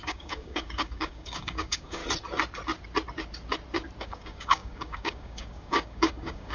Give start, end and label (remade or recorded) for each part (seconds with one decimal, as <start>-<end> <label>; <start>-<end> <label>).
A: 0.0-2.0 remade; 2.0-4.0 recorded; 4.0-6.5 remade